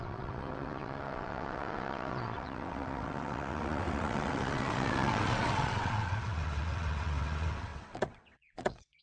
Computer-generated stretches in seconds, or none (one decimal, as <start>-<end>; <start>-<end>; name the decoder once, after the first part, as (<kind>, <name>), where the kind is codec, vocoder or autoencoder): 0.0-9.0 (vocoder, WaveNeXt)